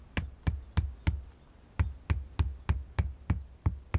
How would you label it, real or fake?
real